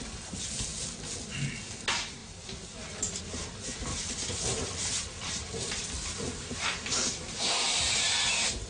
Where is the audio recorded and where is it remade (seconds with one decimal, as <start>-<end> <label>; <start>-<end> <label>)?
0.0-3.9 recorded; 3.9-7.9 remade; 7.9-8.7 recorded